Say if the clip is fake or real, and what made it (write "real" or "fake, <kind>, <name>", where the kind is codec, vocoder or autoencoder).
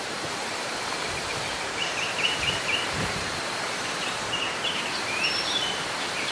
fake, vocoder, BigVGAN v2